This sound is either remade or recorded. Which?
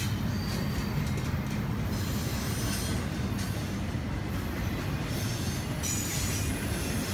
recorded